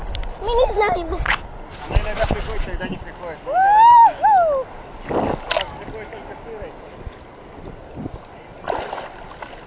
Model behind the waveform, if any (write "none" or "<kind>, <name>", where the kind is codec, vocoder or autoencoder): none